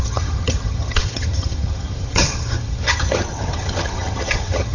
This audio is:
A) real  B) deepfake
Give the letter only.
B